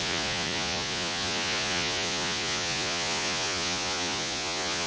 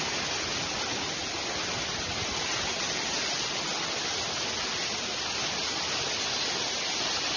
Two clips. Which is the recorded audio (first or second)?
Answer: second